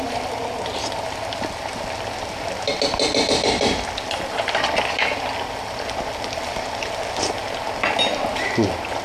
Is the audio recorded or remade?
recorded